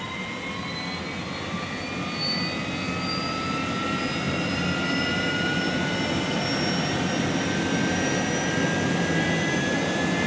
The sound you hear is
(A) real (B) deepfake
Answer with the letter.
A